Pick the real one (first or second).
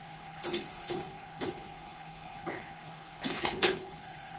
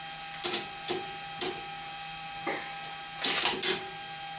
second